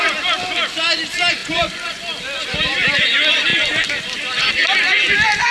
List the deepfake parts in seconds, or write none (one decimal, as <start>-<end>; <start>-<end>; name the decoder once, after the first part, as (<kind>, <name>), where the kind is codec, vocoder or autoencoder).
1.4-2.0 (vocoder, Vocos)